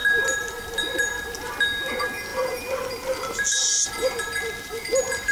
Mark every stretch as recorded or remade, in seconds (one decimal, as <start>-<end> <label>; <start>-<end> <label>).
0.0-2.3 recorded; 2.3-5.3 remade